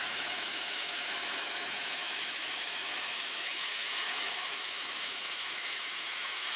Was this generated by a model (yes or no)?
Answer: yes